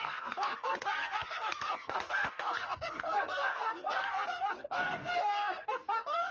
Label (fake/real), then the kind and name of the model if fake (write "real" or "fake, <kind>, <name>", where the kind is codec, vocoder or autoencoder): fake, codec, SNAC